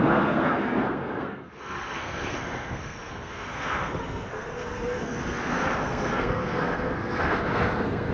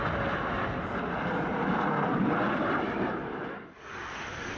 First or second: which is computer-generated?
first